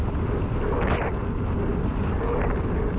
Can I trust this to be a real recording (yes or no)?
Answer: yes